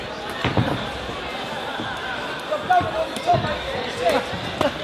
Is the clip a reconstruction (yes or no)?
no